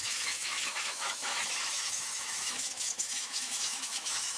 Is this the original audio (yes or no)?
no